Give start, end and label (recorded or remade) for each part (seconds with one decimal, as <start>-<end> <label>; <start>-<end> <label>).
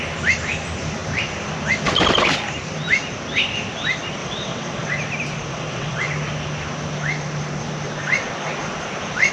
0.0-4.2 recorded; 4.2-4.9 remade; 4.9-5.5 recorded; 5.5-6.1 remade; 6.1-9.3 recorded